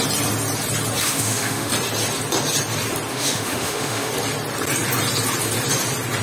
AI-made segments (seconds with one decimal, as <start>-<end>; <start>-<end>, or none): 1.0-1.7; 3.1-4.1